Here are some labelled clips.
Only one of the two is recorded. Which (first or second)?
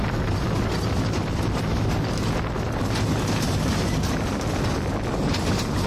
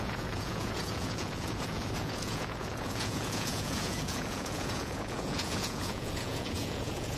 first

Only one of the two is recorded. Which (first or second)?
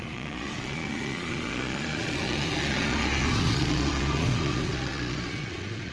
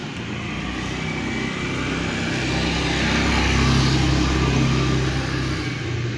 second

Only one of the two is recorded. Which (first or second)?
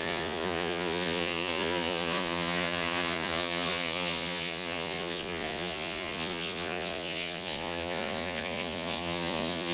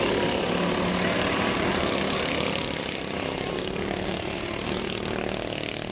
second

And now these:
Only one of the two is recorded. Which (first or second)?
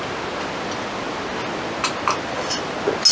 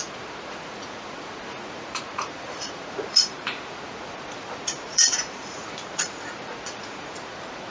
first